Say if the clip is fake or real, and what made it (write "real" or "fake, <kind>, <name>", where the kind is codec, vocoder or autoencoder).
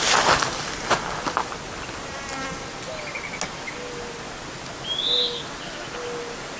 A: real